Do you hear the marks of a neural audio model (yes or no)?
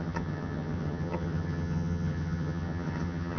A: yes